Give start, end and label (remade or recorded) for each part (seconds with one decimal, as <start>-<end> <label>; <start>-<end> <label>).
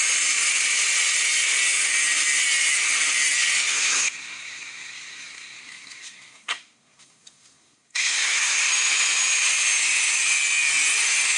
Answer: 0.0-3.7 recorded; 3.7-8.7 remade; 8.7-11.4 recorded